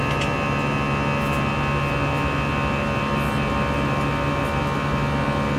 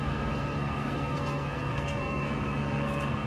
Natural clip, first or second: first